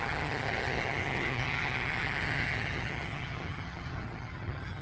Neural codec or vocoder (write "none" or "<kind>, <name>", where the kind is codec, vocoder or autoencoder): vocoder, HiFi-GAN